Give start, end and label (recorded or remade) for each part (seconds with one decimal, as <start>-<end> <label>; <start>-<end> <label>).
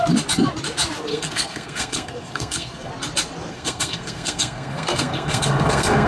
0.0-1.1 recorded; 1.1-2.9 remade; 2.9-3.5 recorded; 3.5-6.1 remade